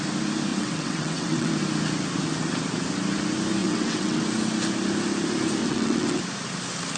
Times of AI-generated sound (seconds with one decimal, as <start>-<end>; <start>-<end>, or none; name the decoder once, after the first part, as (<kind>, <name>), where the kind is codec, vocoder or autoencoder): 0.5-1.5 (vocoder, WaveNeXt); 3.6-4.2; 5.6-6.2